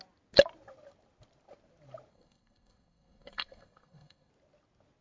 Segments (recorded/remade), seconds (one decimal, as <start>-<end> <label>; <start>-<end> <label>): 0.0-2.1 recorded; 2.1-4.3 remade; 4.3-5.0 recorded